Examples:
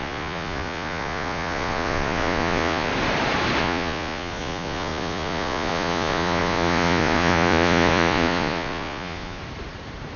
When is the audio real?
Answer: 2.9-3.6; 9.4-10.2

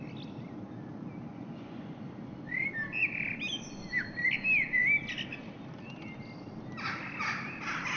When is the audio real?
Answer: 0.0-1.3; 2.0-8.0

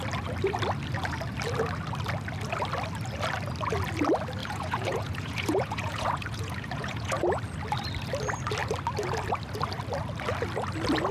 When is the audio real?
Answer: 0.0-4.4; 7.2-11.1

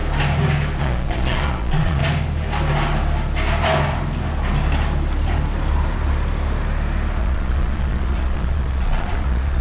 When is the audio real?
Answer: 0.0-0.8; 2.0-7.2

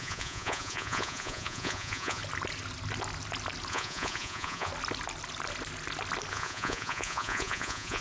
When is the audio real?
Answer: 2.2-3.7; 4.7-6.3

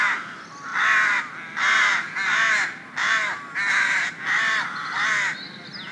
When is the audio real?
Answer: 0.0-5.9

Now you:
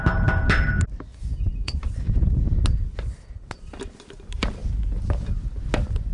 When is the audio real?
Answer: 0.0-1.1; 2.4-6.1

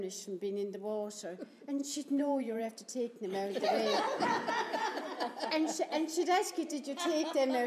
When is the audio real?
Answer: 0.0-1.8; 2.7-7.7